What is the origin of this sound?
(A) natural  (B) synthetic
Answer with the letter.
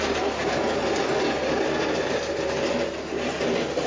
A